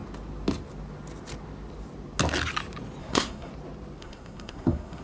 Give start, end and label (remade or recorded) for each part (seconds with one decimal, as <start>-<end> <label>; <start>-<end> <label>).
0.0-3.0 recorded; 3.0-3.5 remade; 3.5-4.0 recorded; 4.0-5.0 remade